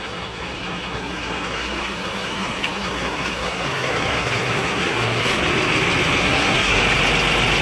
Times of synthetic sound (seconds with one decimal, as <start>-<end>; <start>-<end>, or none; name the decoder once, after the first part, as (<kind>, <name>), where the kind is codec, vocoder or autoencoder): 0.0-5.3 (codec, SNAC); 6.2-6.8